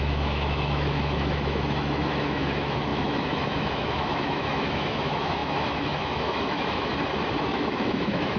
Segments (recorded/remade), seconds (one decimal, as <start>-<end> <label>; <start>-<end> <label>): 0.0-6.9 remade; 6.9-7.5 recorded; 7.5-8.4 remade